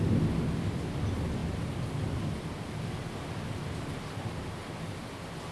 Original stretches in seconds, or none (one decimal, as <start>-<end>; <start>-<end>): 0.0-5.5